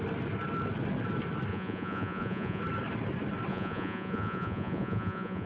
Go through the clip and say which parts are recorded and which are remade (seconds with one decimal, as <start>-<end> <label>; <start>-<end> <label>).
0.0-1.5 recorded; 1.5-2.6 remade; 2.6-3.5 recorded; 3.5-5.5 remade